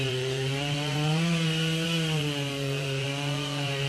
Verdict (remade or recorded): remade